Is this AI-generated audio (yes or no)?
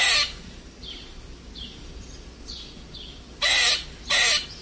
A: no